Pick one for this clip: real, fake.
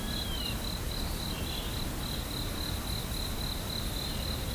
real